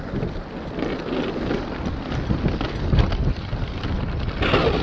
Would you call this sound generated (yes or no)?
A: no